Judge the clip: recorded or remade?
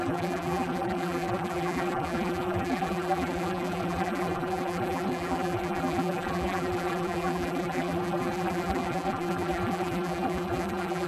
remade